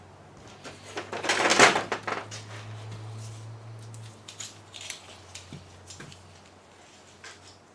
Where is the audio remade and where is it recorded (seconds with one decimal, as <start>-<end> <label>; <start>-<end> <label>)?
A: 0.0-7.7 recorded